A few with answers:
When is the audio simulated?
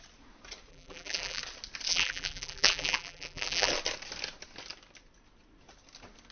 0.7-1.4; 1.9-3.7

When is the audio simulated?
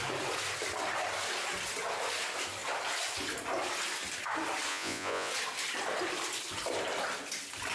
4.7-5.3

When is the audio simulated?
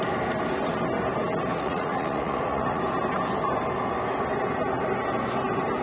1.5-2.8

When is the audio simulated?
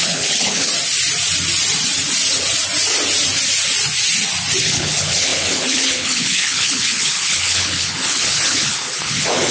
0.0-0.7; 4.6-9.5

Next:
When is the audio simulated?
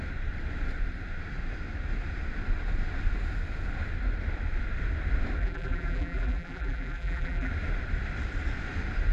5.4-7.5